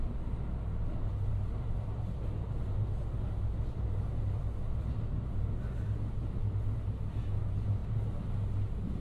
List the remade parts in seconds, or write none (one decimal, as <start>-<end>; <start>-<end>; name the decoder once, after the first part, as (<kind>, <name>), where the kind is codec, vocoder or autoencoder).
none